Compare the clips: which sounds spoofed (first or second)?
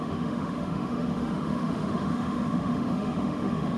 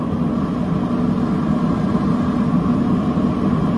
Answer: first